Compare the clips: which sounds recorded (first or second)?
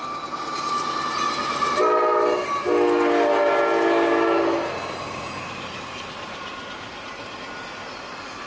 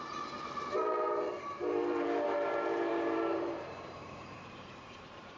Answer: first